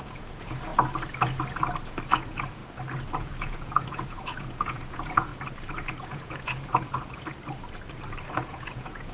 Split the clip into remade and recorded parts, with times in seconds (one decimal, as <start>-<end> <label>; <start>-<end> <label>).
0.0-0.7 remade; 0.7-2.1 recorded; 2.1-2.6 remade; 2.6-3.2 recorded; 3.2-5.3 remade; 5.3-5.9 recorded; 5.9-7.0 remade; 7.0-8.3 recorded; 8.3-9.1 remade